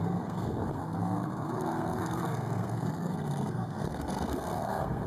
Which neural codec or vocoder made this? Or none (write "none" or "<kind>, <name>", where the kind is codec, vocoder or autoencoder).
codec, SNAC